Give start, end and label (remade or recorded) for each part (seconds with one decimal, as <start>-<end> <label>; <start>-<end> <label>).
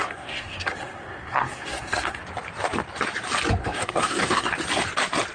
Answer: 0.0-2.2 remade; 2.2-3.6 recorded; 3.6-4.5 remade; 4.5-5.3 recorded